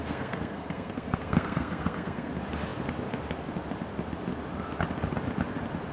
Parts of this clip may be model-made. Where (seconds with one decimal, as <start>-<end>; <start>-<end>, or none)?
0.0-2.3